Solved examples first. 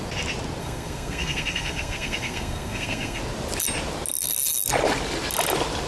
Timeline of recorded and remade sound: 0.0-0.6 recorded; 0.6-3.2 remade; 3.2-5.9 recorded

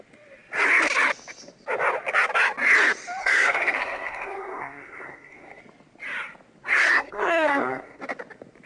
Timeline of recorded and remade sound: 0.0-3.2 recorded; 3.2-5.6 remade; 5.6-6.7 recorded; 6.7-8.0 remade; 8.0-8.7 recorded

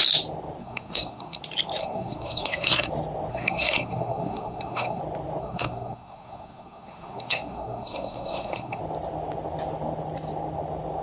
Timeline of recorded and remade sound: 0.0-0.6 recorded; 0.6-1.4 remade; 1.4-1.8 recorded; 1.8-2.9 remade; 2.9-3.3 recorded; 3.3-5.0 remade; 5.0-5.4 recorded; 5.4-8.8 remade; 8.8-11.0 recorded

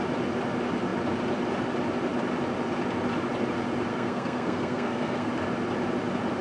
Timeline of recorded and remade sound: 0.0-3.9 recorded; 3.9-5.3 remade; 5.3-6.4 recorded

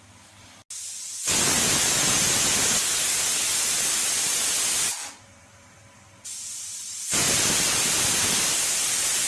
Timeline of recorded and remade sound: 0.0-9.3 recorded

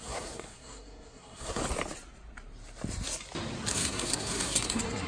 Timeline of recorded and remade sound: 0.0-1.6 remade; 1.6-3.7 recorded; 3.7-5.1 remade

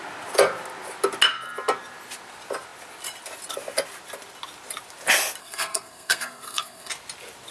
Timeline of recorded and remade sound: 0.0-5.4 recorded; 5.4-6.9 remade; 6.9-7.5 recorded

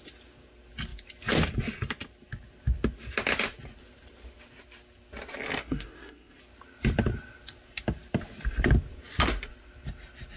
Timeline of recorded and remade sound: 0.0-5.6 recorded; 5.6-6.4 remade; 6.4-10.4 recorded